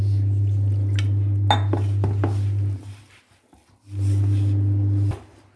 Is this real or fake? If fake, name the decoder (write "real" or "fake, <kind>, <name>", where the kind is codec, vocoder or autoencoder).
real